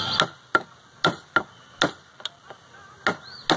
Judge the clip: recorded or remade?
recorded